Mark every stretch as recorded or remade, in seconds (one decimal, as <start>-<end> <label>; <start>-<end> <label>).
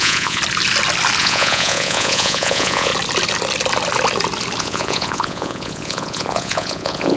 0.0-0.4 remade; 0.4-1.2 recorded; 1.2-2.9 remade; 2.9-4.6 recorded; 4.6-7.2 remade